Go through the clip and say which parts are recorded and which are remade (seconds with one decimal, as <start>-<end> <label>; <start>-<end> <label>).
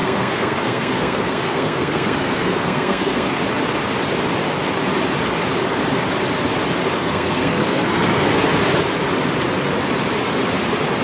0.0-3.4 remade; 3.4-7.0 recorded; 7.0-8.3 remade; 8.3-11.0 recorded